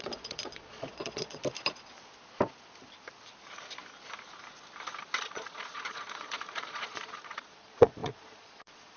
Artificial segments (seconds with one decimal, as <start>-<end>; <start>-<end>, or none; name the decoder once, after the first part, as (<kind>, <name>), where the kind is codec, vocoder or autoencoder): 0.0-1.4 (vocoder, Vocos); 5.2-9.0